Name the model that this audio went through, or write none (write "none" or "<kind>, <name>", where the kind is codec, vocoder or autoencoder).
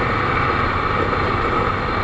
none